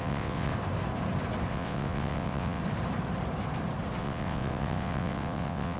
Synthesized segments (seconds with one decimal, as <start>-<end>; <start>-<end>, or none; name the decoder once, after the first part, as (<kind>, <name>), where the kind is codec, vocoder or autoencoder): 0.0-0.5 (vocoder, WaveNeXt); 1.5-2.6; 4.0-5.8